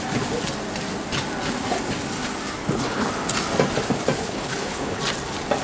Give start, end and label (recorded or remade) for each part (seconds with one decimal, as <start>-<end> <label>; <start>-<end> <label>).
0.0-2.6 recorded; 2.6-3.1 remade; 3.1-4.2 recorded; 4.2-5.0 remade; 5.0-5.6 recorded